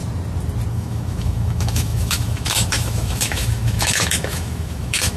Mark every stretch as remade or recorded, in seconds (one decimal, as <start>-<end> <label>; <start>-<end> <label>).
0.0-0.7 recorded; 0.7-5.2 remade